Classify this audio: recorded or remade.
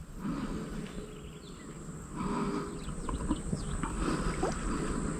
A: recorded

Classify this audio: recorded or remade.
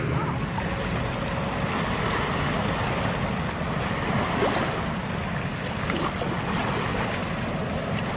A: recorded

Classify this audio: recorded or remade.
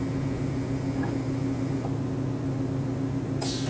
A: recorded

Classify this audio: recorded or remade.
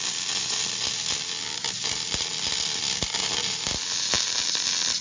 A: recorded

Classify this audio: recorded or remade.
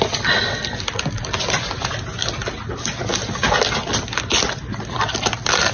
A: recorded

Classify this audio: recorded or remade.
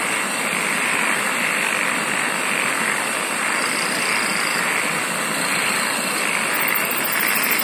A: recorded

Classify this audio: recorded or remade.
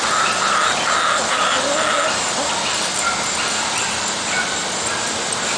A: recorded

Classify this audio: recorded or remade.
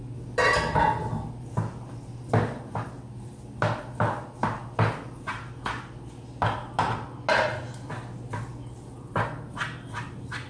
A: recorded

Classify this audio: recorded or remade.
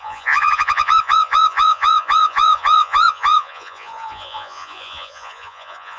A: remade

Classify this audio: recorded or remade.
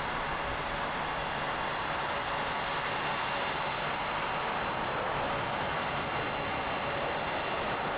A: recorded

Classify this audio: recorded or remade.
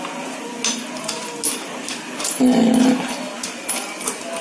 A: recorded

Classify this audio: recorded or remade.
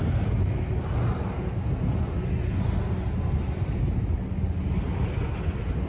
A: recorded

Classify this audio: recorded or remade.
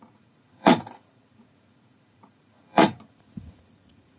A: remade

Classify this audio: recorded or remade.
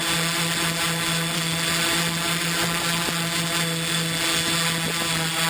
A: recorded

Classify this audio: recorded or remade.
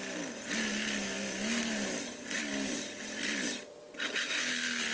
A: recorded